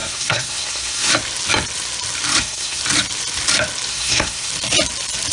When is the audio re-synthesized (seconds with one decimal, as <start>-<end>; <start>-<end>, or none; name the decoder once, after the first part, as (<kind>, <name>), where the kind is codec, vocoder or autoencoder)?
0.0-1.1 (codec, SNAC); 2.4-2.8; 3.9-4.5